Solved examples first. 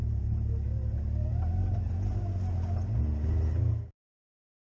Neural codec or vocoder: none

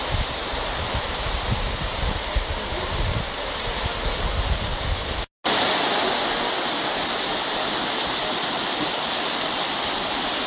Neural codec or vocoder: none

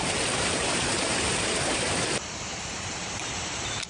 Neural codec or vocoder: vocoder, BigVGAN v2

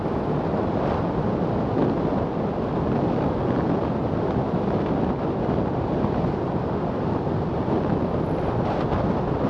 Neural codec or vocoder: none